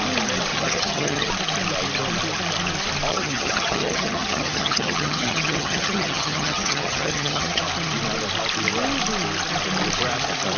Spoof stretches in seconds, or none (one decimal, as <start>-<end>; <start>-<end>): 0.5-1.3; 3.1-7.6